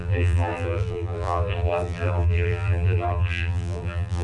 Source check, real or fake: fake